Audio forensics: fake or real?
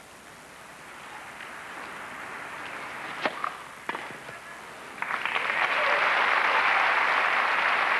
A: real